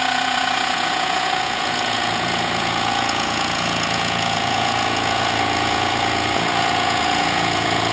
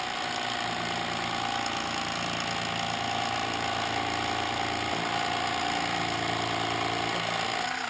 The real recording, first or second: second